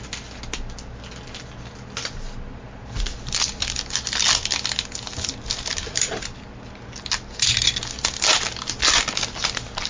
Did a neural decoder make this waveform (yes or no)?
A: no